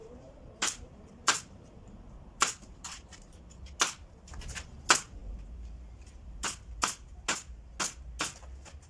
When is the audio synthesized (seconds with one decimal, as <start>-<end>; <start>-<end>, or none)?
0.0-3.4